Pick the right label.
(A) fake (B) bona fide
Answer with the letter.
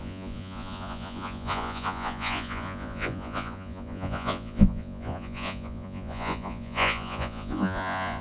A